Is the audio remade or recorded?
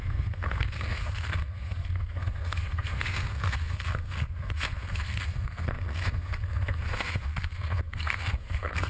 remade